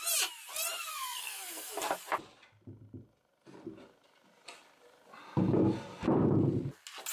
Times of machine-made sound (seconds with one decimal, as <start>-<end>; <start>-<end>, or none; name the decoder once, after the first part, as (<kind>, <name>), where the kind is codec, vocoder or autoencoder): 0.9-1.7 (codec, SNAC)